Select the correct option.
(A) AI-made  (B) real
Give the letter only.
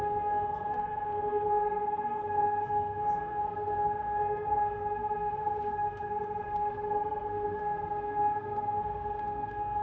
A